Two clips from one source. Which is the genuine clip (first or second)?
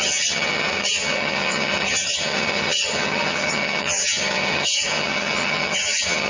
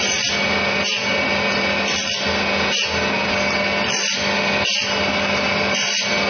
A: second